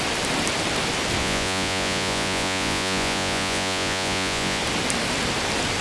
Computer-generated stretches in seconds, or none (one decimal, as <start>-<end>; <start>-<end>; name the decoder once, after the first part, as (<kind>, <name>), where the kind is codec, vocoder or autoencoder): 1.2-4.6 (vocoder, Vocos)